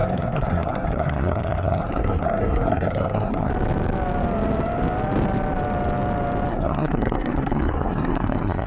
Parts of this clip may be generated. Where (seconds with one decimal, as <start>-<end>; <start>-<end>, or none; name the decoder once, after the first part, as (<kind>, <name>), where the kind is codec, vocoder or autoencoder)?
0.0-3.5 (codec, SNAC); 6.5-8.7